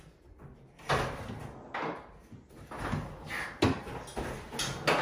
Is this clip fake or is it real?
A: real